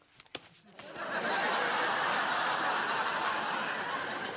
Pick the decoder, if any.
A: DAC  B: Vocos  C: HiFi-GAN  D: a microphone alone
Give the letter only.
D